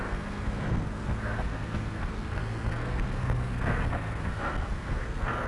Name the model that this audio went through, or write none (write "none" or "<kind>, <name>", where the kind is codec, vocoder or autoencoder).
codec, SNAC